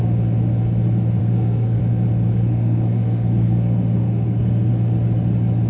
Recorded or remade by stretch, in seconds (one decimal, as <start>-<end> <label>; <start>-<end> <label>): 0.0-1.2 recorded; 1.2-1.8 remade; 1.8-2.3 recorded; 2.3-4.7 remade; 4.7-5.7 recorded